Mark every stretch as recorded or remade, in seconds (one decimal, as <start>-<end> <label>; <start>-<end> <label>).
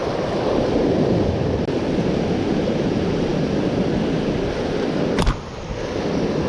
0.0-6.5 recorded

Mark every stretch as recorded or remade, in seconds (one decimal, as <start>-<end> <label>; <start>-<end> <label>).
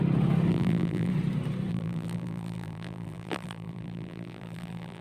0.0-0.5 recorded; 0.5-1.1 remade; 1.1-1.7 recorded; 1.7-5.0 remade